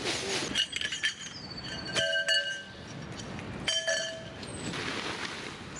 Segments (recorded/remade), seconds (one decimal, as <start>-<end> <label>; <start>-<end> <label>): 0.0-5.8 recorded